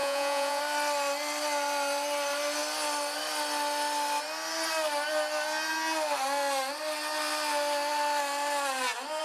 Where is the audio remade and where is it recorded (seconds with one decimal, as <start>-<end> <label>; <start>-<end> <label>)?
0.0-0.6 remade; 0.6-9.2 recorded